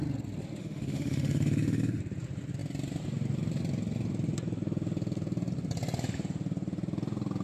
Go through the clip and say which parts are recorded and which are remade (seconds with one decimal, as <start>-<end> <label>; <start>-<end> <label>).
0.0-0.6 recorded; 0.6-2.0 remade; 2.0-7.4 recorded